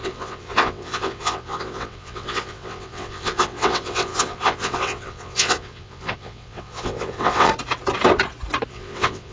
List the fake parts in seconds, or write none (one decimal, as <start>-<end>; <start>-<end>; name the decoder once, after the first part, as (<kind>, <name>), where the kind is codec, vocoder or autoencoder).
0.0-7.5 (vocoder, WaveNeXt); 8.7-9.3

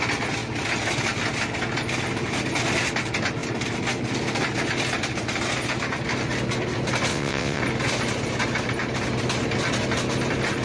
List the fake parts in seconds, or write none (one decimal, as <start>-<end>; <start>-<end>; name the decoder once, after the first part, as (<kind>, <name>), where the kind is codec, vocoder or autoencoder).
7.1-7.6 (vocoder, WaveNeXt)

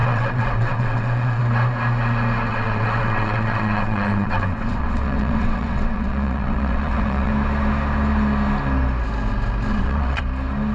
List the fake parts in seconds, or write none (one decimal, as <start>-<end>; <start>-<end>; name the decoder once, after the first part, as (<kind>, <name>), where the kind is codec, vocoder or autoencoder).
0.0-1.4 (vocoder, WaveNeXt); 2.5-7.3; 9.7-10.2

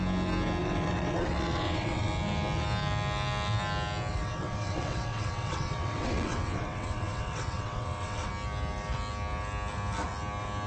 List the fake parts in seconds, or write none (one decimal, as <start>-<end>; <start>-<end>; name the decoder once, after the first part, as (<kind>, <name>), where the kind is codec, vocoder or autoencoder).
0.6-2.1 (vocoder, WaveNeXt); 4.1-8.3

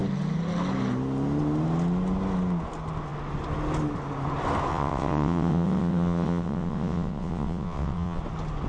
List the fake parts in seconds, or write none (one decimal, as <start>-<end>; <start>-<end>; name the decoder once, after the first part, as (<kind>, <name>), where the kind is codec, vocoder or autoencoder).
4.7-8.2 (vocoder, WaveNeXt)

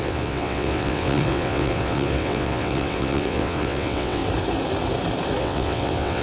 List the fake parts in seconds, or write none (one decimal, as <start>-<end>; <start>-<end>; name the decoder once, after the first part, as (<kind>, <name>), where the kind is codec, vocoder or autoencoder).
0.0-4.2 (vocoder, WaveNeXt); 5.4-6.2